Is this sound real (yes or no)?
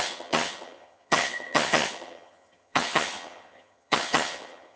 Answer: no